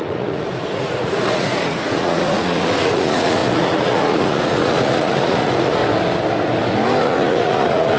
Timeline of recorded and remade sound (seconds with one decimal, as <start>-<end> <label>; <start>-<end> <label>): 0.0-5.8 remade; 5.8-7.0 recorded; 7.0-8.0 remade